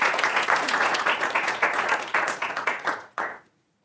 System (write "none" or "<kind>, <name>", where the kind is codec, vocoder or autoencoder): vocoder, Vocos